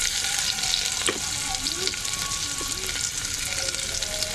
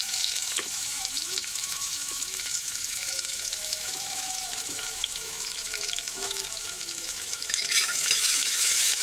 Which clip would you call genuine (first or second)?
first